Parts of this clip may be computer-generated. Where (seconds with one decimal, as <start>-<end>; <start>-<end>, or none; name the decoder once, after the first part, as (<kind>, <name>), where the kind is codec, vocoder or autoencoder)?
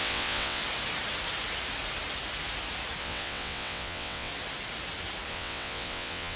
0.0-0.6 (vocoder, WaveNeXt); 3.0-4.3; 5.3-6.4